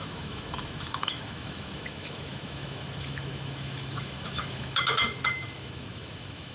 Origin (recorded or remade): remade